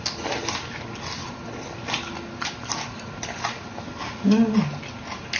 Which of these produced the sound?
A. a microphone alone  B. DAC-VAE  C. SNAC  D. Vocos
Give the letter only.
A